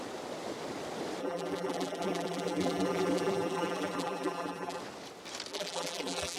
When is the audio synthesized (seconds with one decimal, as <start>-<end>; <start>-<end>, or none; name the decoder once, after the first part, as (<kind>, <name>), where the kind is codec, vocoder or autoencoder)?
1.2-4.8 (vocoder, BigVGAN v2); 5.5-6.4